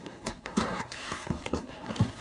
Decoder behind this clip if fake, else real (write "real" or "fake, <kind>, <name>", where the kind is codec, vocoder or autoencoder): fake, codec, SNAC